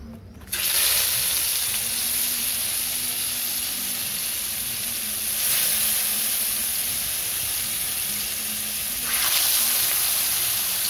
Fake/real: real